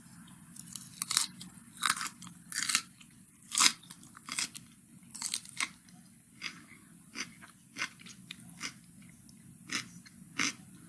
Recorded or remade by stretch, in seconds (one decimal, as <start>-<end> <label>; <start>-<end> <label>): 0.0-10.9 recorded